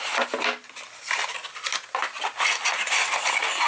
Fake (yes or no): no